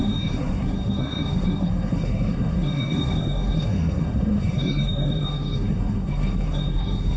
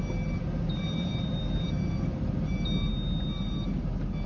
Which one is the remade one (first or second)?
first